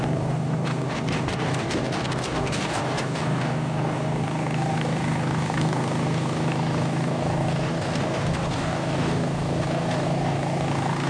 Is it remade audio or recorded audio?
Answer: remade